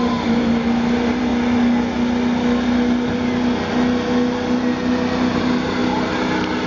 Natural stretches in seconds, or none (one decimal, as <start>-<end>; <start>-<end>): 1.3-5.3; 5.8-6.7